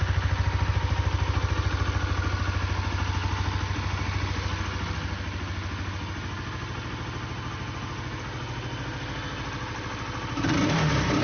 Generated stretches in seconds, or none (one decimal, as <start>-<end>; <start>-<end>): none